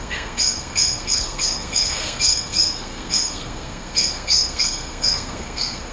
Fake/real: fake